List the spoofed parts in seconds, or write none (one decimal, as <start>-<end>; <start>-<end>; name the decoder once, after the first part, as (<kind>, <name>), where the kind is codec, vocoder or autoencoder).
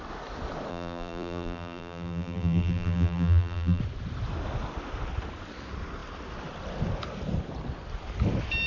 0.7-3.8 (vocoder, BigVGAN v2)